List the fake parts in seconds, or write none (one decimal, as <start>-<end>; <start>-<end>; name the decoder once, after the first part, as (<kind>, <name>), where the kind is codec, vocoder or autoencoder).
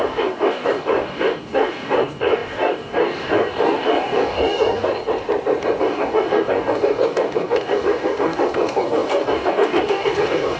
0.0-5.0 (codec, DAC); 5.8-10.6